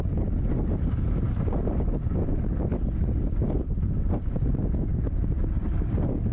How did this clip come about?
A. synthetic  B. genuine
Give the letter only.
B